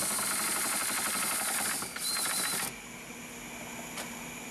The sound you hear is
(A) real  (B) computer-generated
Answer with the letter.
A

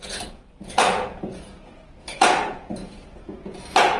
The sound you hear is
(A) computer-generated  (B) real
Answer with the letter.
A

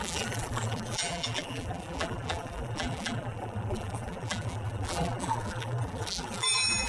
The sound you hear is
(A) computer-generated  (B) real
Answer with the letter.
A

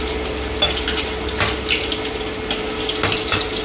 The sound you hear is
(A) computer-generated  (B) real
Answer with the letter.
B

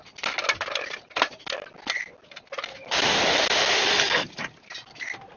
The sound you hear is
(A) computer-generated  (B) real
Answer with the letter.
B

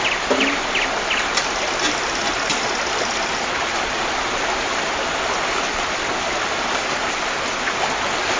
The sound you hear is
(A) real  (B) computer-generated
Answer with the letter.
A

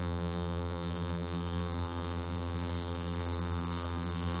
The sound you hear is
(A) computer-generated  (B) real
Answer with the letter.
A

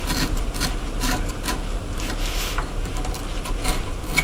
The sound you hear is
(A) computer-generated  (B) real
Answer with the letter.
B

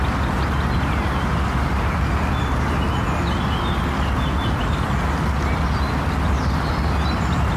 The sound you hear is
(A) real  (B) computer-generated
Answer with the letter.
A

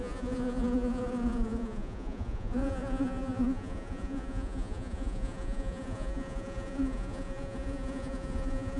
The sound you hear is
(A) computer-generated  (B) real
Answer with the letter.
A